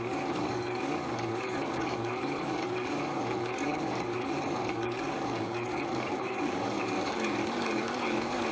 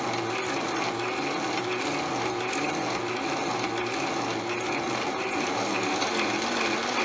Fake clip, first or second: first